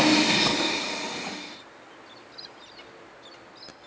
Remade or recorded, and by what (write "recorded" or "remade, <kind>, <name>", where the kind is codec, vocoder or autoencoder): recorded